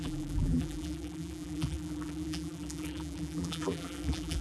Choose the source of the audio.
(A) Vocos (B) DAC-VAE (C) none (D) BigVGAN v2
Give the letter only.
D